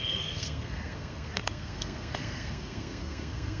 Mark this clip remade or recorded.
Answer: remade